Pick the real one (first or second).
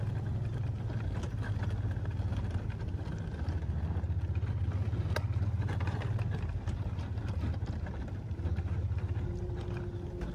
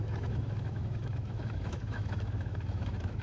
first